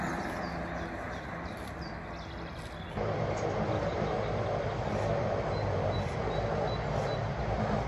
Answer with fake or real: real